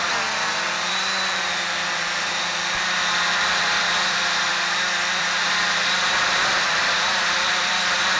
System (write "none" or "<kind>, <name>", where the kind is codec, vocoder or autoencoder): vocoder, BigVGAN v2